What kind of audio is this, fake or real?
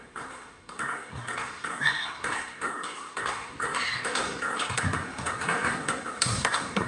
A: fake